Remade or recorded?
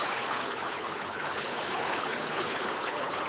remade